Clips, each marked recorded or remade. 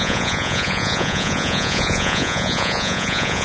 remade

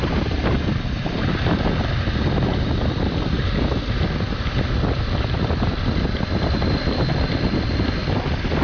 recorded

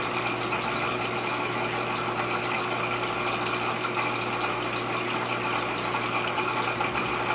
recorded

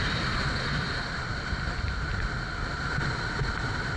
recorded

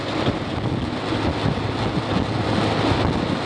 recorded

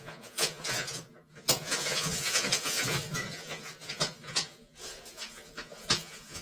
remade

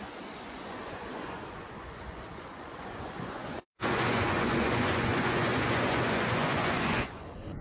remade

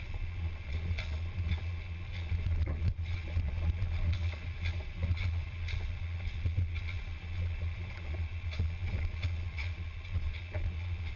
remade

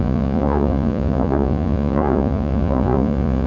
remade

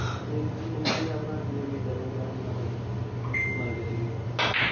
recorded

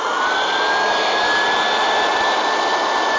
recorded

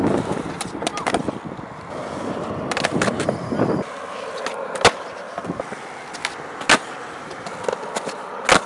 recorded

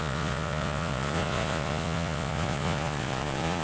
remade